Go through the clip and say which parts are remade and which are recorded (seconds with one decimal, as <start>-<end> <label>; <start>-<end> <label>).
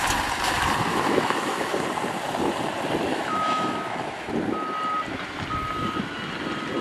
0.0-0.9 recorded; 0.9-1.7 remade; 1.7-3.1 recorded; 3.1-4.3 remade; 4.3-6.8 recorded